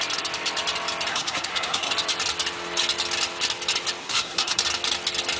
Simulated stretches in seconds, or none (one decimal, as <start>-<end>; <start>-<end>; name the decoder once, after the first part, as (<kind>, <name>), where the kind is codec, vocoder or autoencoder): 1.1-1.9 (codec, SNAC); 4.0-4.6